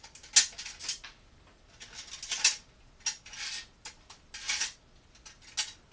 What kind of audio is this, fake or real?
real